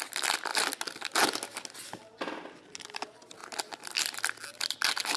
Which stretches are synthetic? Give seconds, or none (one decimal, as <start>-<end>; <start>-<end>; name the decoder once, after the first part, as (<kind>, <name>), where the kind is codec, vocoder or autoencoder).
none